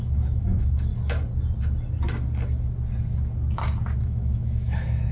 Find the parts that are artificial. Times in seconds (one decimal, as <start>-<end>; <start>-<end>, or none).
0.0-0.9; 4.0-5.1